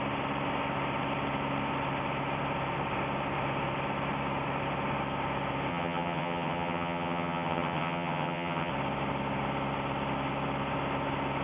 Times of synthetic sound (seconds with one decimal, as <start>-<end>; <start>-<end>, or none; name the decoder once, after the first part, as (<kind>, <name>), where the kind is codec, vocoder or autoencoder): 5.7-8.7 (vocoder, HiFi-GAN)